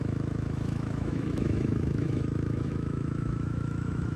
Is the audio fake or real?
fake